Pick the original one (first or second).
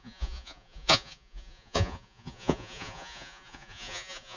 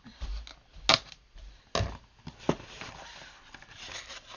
second